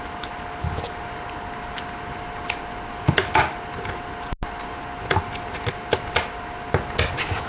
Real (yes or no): yes